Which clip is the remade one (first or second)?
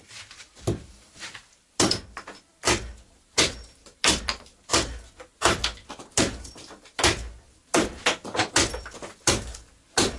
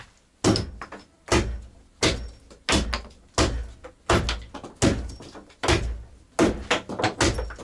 first